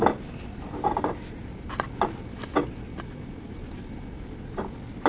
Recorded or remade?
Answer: recorded